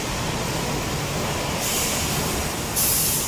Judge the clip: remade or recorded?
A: recorded